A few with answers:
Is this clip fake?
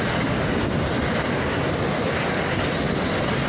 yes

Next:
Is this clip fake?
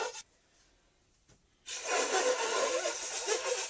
no